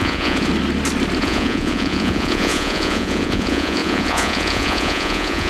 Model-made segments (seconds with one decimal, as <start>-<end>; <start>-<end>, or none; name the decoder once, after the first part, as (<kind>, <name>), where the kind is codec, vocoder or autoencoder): 0.0-0.5 (vocoder, Vocos); 1.2-5.5